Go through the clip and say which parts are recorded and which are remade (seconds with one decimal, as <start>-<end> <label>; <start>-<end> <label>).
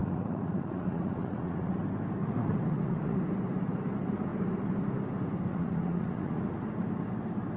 0.0-1.8 remade; 1.8-2.2 recorded; 2.2-3.2 remade; 3.2-5.5 recorded; 5.5-6.6 remade; 6.6-7.6 recorded